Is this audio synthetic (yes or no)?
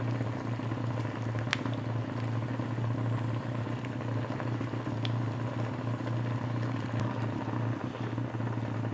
no